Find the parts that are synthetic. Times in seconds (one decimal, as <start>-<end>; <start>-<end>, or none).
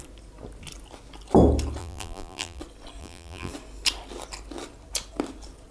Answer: 1.8-2.6; 3.0-3.5